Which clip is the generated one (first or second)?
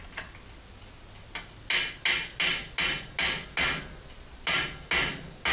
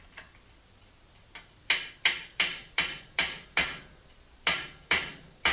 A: second